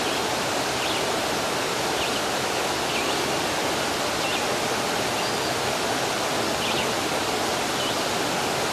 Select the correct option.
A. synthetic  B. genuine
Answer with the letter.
B